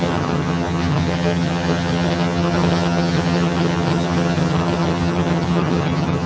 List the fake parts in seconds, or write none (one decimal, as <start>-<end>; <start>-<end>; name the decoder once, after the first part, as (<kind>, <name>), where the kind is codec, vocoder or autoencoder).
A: 0.0-6.3 (vocoder, HiFi-GAN)